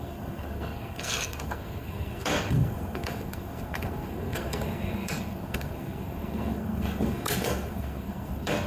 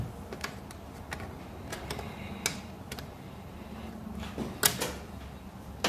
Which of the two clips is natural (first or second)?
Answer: second